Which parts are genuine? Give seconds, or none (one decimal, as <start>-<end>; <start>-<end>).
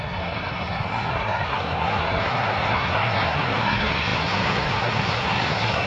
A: none